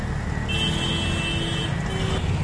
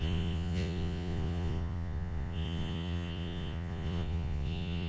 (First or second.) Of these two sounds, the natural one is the first